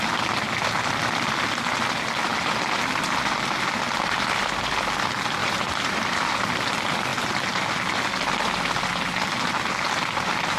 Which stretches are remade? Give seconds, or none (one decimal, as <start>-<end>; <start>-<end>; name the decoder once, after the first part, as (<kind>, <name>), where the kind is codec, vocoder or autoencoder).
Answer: 5.4-6.2 (vocoder, BigVGAN v2)